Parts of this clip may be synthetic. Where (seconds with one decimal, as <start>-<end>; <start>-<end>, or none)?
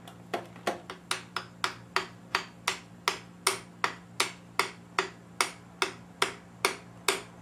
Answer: none